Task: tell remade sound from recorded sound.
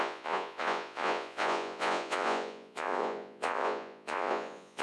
remade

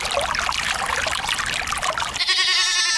recorded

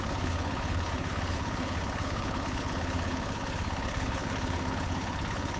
remade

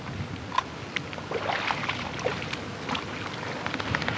recorded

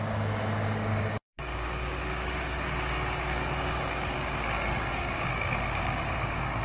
remade